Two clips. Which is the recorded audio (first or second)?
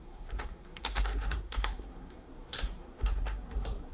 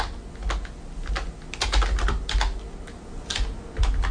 second